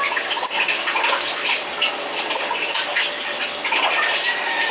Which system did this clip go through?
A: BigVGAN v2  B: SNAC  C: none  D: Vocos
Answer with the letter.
C